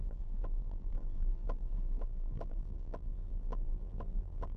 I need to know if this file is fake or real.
fake